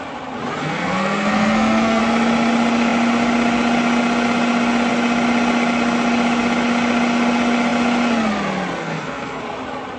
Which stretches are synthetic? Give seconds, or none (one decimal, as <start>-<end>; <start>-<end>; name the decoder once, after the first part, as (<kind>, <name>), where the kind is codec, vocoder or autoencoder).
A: 0.6-2.0 (codec, SNAC); 8.8-9.4